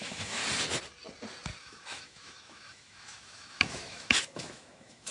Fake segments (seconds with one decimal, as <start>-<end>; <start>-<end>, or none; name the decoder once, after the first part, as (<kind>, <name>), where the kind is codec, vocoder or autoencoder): 0.0-0.4 (autoencoder, DAC-VAE); 1.6-5.1